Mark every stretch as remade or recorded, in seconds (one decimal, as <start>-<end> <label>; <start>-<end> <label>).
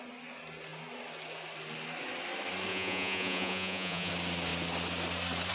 0.0-2.7 recorded; 2.7-4.1 remade; 4.1-5.5 recorded